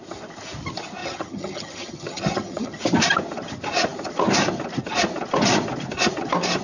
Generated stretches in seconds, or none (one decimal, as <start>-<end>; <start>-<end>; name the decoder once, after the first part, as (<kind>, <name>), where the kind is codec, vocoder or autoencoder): 1.0-2.8 (vocoder, HiFi-GAN)